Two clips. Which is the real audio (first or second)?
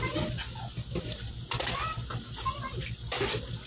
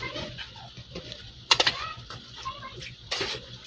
first